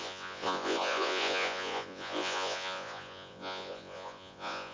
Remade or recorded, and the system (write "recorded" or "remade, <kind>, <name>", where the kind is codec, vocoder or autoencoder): remade, vocoder, Vocos